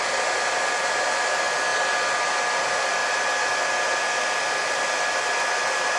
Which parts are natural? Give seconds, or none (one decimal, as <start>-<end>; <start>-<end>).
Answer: 0.0-6.0